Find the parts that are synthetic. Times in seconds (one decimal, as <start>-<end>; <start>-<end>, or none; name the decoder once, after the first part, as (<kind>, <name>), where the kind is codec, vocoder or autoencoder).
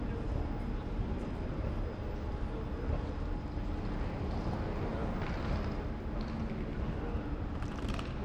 none